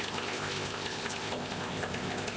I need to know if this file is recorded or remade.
remade